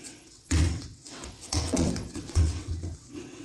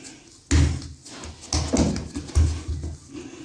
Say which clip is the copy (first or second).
first